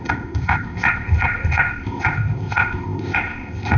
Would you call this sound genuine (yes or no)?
no